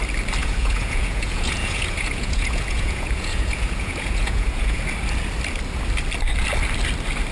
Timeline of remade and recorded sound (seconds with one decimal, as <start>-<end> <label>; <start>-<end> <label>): 0.0-0.4 recorded; 0.4-4.8 remade; 4.8-7.3 recorded